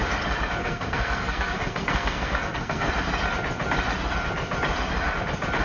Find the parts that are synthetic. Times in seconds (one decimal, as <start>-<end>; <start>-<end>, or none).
0.6-2.9